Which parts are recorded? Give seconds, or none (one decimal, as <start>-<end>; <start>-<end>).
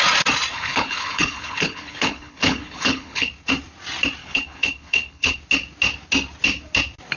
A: 0.0-0.5; 3.3-4.2; 5.4-7.2